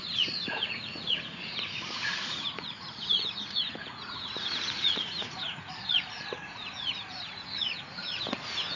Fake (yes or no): yes